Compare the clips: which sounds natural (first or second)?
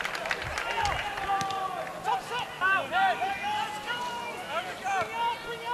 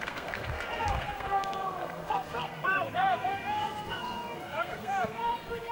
first